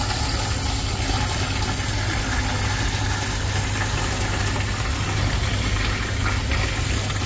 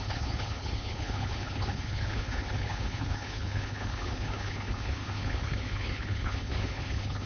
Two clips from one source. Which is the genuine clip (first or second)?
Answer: first